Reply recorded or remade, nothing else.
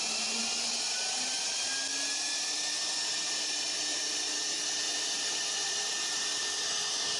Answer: recorded